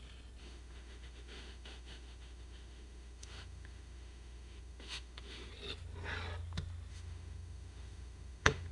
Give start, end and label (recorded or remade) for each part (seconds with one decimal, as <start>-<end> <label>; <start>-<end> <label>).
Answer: 0.0-0.4 recorded; 0.4-5.5 remade; 5.5-6.9 recorded; 6.9-8.7 remade